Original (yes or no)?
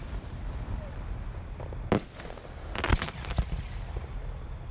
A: yes